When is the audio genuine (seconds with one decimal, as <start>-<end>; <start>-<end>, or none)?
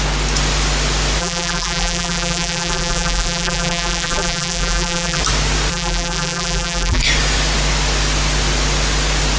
0.0-1.2; 5.2-5.7; 7.0-9.4